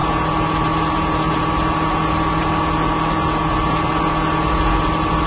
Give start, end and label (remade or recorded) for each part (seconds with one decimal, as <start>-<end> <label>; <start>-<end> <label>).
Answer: 0.0-5.3 recorded